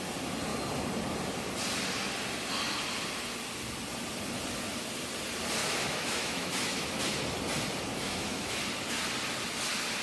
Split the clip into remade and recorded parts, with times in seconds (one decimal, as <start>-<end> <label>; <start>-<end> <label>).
0.0-5.6 recorded; 5.6-7.0 remade; 7.0-7.9 recorded; 7.9-8.6 remade; 8.6-10.0 recorded